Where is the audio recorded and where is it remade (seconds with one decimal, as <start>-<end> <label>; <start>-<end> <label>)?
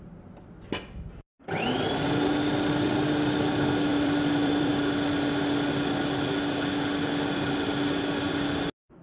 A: 0.0-3.9 recorded; 3.9-4.7 remade; 4.7-9.0 recorded